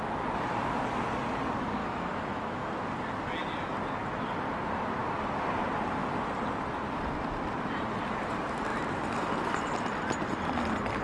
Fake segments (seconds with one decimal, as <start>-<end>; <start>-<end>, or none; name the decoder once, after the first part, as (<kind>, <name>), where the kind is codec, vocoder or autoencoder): 1.8-2.7 (autoencoder, DAC-VAE)

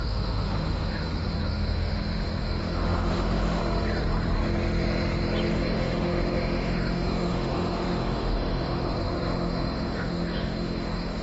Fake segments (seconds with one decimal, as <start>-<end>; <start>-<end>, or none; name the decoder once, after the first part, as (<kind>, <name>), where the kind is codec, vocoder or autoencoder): 0.0-3.6 (autoencoder, DAC-VAE); 5.5-11.2

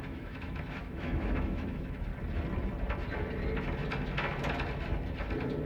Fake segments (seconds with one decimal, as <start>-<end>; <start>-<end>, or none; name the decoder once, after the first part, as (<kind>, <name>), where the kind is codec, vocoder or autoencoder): 0.0-2.1 (autoencoder, DAC-VAE)

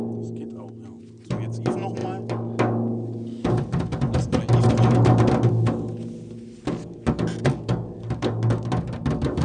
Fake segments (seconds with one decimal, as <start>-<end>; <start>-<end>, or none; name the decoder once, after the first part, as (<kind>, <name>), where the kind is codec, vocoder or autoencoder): none

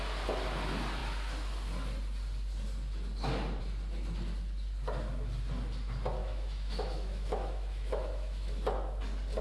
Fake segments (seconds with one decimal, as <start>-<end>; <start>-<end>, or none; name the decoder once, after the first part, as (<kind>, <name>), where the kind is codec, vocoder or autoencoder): 6.2-9.0 (autoencoder, DAC-VAE)